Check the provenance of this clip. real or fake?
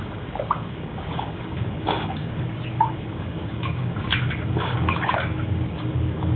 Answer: fake